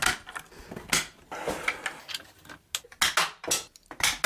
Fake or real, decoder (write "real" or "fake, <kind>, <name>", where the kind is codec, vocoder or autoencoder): real